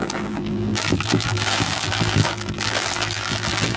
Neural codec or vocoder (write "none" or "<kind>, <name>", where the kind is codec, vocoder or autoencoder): vocoder, BigVGAN v2